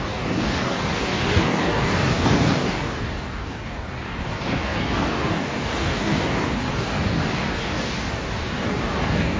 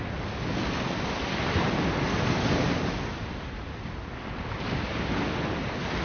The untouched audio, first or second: second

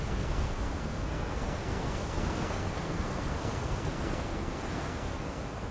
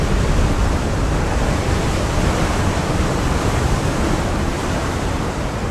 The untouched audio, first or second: second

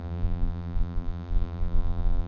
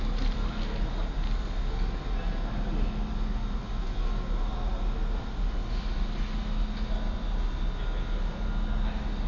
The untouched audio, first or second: second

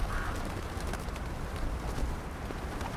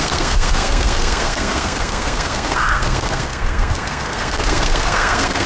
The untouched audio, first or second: first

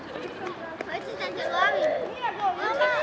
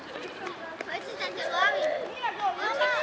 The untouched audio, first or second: first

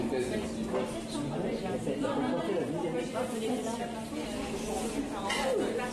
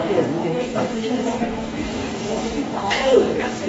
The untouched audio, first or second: first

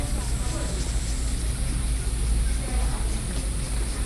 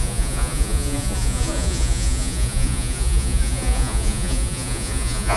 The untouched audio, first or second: first